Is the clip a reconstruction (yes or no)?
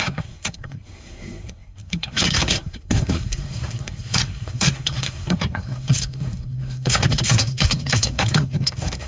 yes